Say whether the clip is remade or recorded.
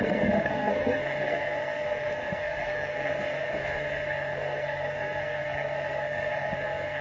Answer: remade